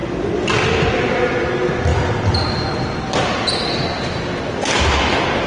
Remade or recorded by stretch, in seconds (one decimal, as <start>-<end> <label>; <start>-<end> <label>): 0.0-5.5 recorded